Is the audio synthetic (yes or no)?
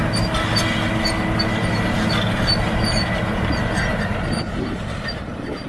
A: no